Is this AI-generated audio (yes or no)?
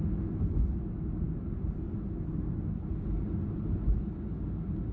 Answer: no